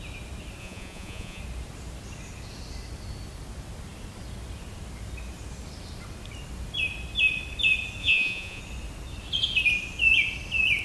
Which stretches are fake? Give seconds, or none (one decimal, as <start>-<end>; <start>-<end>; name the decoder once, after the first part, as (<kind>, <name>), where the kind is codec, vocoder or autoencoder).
0.6-1.4 (vocoder, Vocos); 8.0-8.6